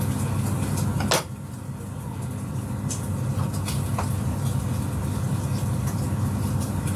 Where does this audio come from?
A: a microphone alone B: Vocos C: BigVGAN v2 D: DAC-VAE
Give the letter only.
A